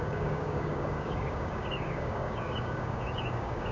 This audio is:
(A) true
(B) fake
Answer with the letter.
B